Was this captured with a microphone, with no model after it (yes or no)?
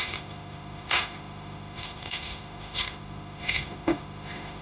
no